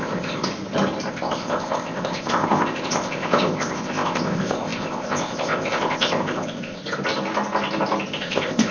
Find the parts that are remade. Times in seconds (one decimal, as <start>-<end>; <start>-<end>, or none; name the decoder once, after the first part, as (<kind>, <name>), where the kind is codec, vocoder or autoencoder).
0.0-0.5 (codec, ZipCodec); 1.1-6.8; 8.2-8.7

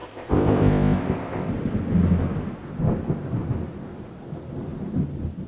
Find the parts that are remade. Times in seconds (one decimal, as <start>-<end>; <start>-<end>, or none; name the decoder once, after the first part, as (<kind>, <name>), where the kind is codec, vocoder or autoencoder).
0.0-1.5 (codec, ZipCodec)

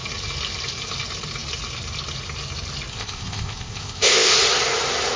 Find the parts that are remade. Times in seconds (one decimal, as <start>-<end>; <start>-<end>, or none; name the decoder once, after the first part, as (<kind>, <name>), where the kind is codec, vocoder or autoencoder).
2.9-4.3 (codec, ZipCodec)

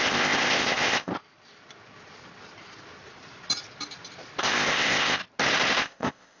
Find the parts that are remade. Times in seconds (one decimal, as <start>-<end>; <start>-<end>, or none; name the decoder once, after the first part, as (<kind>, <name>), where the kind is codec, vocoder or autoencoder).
0.0-1.1 (codec, ZipCodec); 4.4-5.2; 5.8-6.4

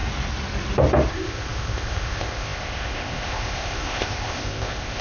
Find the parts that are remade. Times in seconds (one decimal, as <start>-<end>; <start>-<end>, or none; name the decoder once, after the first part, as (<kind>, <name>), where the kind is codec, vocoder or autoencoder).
1.1-5.0 (codec, ZipCodec)

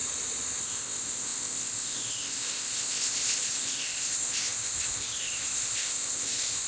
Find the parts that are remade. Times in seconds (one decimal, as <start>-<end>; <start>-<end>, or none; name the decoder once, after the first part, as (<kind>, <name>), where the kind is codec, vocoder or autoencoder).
0.6-6.7 (codec, ZipCodec)

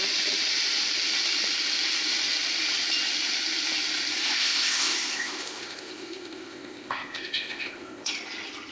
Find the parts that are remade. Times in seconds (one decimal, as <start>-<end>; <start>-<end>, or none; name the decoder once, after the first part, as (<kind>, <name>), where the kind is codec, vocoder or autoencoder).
4.2-8.1 (codec, ZipCodec)